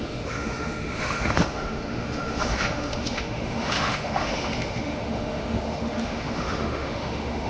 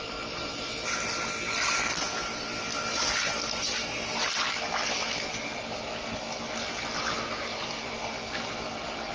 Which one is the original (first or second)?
second